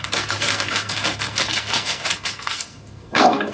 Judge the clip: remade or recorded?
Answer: remade